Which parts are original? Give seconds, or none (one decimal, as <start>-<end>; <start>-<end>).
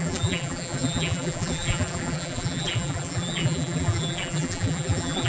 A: none